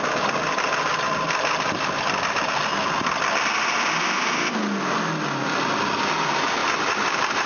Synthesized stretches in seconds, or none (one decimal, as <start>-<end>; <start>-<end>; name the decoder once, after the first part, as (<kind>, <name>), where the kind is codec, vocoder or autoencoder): 6.6-7.5 (vocoder, BigVGAN v2)

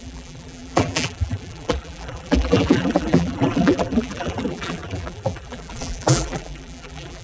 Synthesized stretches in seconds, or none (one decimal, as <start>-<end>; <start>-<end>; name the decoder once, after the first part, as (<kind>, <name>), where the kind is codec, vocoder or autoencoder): 0.0-7.2 (vocoder, BigVGAN v2)

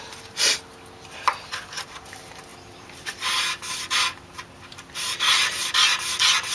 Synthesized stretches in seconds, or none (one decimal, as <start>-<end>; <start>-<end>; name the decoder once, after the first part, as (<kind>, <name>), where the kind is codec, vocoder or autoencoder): 2.5-3.7 (vocoder, BigVGAN v2)

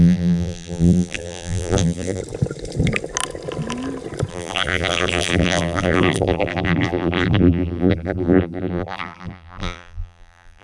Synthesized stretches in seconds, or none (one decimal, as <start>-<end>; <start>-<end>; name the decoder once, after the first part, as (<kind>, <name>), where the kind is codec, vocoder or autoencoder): 0.0-2.2 (vocoder, BigVGAN v2); 4.3-10.6

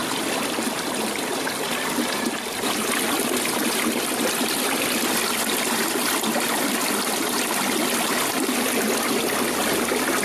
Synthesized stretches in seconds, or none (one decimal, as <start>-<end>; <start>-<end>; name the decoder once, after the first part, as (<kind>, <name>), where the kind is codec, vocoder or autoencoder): none